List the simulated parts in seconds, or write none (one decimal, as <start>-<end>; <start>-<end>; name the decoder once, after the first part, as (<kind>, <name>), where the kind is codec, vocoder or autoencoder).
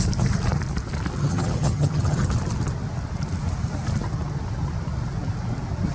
1.2-2.3 (vocoder, HiFi-GAN)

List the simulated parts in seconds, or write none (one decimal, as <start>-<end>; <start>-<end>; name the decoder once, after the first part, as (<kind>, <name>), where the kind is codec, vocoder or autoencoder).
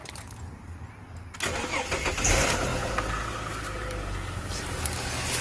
2.1-2.7 (vocoder, BigVGAN v2); 3.5-5.4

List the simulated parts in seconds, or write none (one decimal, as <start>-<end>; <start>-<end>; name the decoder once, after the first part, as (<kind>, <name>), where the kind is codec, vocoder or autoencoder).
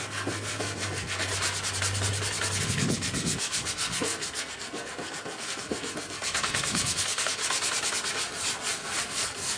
0.0-1.3 (codec, SNAC); 2.6-7.4; 8.7-9.6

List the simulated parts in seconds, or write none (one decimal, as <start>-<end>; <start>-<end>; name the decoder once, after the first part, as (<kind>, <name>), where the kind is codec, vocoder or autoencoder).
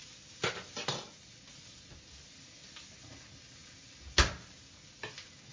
none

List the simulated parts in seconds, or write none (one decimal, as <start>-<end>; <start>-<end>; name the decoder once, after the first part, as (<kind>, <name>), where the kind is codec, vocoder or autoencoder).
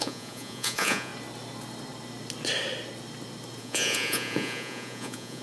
0.0-1.1 (vocoder, Vocos); 3.6-5.4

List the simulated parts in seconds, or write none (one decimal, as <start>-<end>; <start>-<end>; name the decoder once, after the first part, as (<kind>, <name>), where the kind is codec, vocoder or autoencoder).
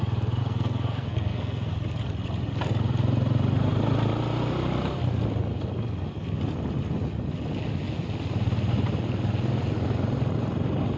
0.4-1.7 (codec, SNAC)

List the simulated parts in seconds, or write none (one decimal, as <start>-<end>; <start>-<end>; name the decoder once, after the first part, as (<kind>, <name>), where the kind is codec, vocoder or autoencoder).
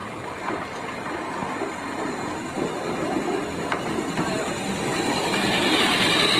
none